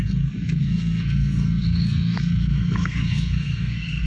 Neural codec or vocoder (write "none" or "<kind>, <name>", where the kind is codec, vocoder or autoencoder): codec, SNAC